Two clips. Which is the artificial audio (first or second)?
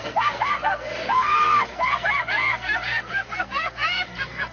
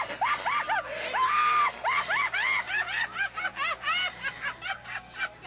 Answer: first